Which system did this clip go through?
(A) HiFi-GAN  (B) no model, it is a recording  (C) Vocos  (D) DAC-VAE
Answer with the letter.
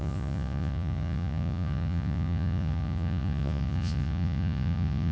C